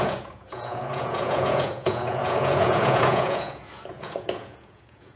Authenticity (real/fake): fake